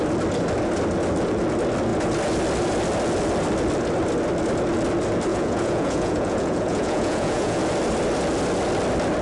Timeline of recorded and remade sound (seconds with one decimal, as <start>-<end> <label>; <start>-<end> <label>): 0.0-5.3 recorded; 5.3-7.6 remade; 7.6-9.2 recorded